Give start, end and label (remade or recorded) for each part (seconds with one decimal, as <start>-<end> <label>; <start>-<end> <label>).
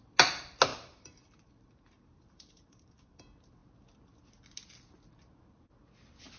0.0-0.7 recorded; 0.7-3.2 remade; 3.2-6.4 recorded